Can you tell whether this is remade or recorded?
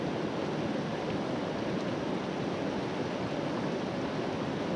recorded